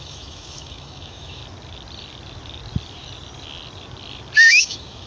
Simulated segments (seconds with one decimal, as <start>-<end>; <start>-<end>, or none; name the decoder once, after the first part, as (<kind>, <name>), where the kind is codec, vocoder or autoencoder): 0.0-1.4 (autoencoder, DAC-VAE); 4.5-5.1

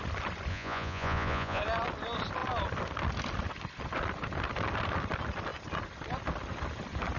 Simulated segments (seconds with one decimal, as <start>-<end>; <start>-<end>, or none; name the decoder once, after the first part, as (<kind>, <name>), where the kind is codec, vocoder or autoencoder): 0.5-1.6 (vocoder, Vocos)

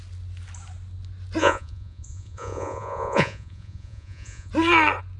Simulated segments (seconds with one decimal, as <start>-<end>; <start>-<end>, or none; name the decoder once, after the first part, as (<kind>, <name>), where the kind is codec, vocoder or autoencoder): 1.4-4.5 (vocoder, Vocos)

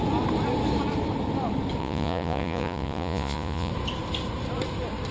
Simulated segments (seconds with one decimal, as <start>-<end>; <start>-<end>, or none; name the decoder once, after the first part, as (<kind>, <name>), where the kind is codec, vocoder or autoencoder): 1.8-3.7 (vocoder, Vocos)

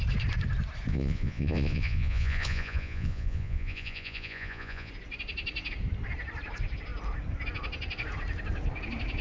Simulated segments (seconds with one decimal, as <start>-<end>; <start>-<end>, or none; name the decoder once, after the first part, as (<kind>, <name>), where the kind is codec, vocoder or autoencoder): 0.9-4.9 (vocoder, Vocos)

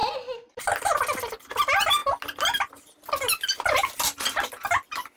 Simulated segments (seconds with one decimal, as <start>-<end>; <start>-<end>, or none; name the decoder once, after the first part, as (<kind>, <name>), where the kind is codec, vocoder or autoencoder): none

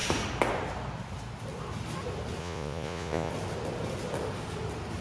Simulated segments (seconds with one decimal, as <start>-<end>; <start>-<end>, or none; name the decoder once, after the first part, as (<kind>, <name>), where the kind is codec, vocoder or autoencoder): 2.4-3.3 (vocoder, Vocos)